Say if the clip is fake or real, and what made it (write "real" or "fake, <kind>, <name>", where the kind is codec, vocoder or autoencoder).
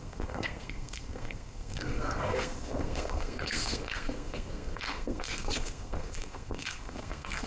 fake, codec, SNAC